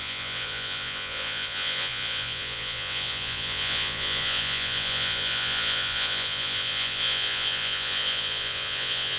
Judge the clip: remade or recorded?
remade